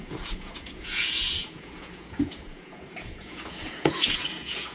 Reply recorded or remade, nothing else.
remade